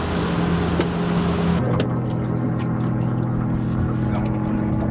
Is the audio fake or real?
real